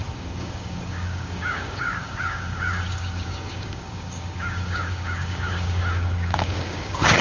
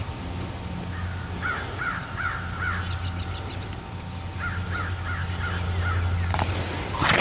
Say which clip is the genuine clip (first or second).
second